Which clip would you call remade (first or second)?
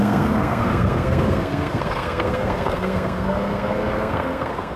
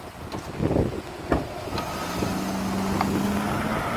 first